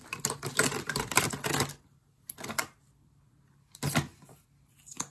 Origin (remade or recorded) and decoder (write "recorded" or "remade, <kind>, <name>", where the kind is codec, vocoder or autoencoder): recorded